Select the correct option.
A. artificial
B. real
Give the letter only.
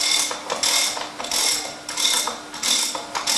B